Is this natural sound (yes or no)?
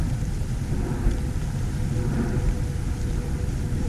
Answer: no